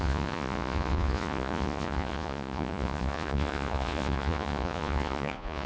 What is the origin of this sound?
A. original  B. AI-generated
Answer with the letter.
B